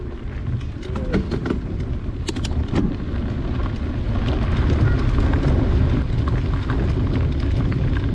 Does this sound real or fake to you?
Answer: real